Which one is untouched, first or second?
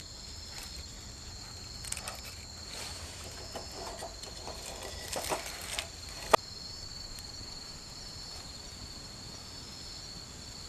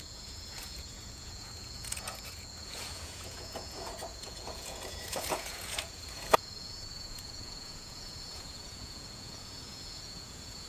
first